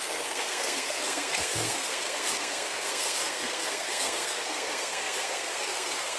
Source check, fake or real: fake